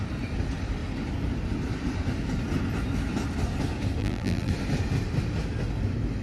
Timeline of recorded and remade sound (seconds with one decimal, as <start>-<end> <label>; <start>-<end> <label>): 0.0-4.0 recorded; 4.0-4.5 remade; 4.5-6.2 recorded

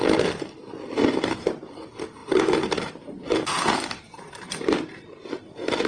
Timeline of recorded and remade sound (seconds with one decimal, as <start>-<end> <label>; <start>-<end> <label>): 0.0-2.2 recorded; 2.2-5.9 remade

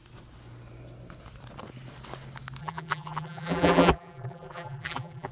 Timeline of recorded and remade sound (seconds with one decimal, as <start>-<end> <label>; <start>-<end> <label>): 0.0-2.6 recorded; 2.6-5.3 remade

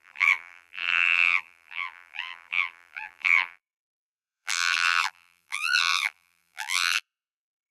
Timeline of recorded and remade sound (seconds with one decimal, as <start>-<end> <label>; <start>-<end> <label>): 0.0-7.7 remade

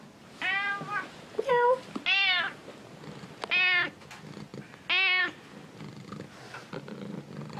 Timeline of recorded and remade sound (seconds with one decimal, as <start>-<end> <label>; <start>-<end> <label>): 0.0-7.6 recorded

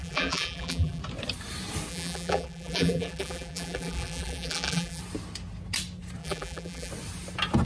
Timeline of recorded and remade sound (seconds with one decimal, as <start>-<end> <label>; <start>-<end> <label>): 0.0-1.0 remade; 1.0-1.9 recorded; 1.9-5.0 remade; 5.0-6.2 recorded; 6.2-6.9 remade; 6.9-7.7 recorded